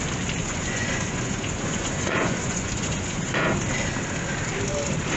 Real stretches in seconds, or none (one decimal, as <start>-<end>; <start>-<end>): 0.0-0.4; 3.5-5.2